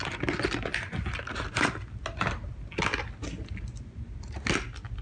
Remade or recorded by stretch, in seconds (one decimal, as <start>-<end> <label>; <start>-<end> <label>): 0.0-5.0 recorded